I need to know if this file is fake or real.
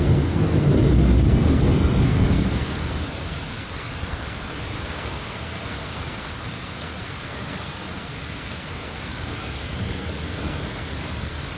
fake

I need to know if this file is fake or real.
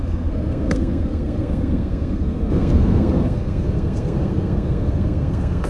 fake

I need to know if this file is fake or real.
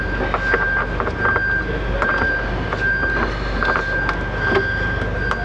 real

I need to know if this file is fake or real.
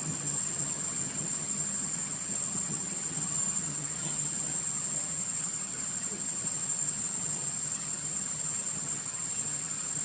fake